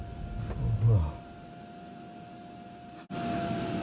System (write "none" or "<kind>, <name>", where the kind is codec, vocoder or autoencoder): none